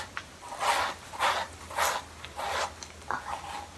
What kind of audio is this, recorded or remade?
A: recorded